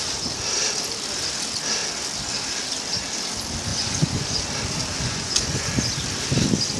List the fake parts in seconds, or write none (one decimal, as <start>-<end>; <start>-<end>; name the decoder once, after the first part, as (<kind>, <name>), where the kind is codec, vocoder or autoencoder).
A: 3.7-4.4 (vocoder, Vocos); 4.9-5.7